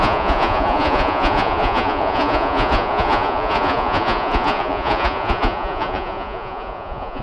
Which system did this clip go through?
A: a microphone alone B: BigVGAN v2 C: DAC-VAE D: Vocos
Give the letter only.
D